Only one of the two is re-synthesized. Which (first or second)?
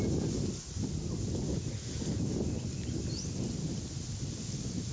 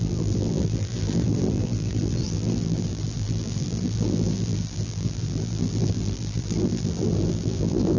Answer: second